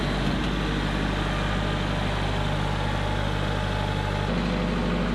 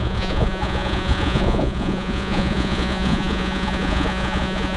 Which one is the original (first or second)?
first